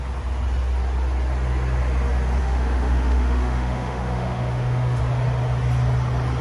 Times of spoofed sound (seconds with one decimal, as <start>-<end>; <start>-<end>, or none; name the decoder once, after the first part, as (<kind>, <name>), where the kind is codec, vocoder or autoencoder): 2.4-5.0 (autoencoder, DAC-VAE)